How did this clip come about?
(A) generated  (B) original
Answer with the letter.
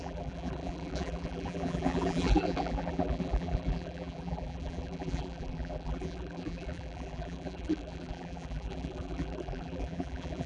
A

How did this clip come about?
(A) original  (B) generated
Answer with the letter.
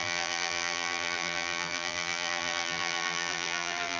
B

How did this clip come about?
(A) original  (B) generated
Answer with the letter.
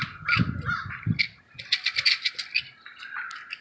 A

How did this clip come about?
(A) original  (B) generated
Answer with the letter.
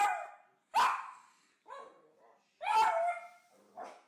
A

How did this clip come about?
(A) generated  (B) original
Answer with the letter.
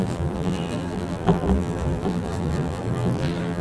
A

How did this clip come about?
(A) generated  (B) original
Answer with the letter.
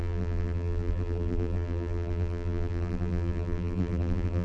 A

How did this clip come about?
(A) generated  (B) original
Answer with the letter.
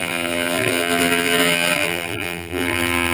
A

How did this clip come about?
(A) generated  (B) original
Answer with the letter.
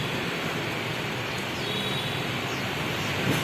A